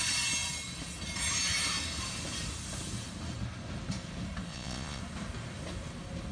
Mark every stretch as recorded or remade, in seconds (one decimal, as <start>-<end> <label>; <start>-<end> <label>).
0.0-4.5 recorded; 4.5-5.0 remade; 5.0-6.3 recorded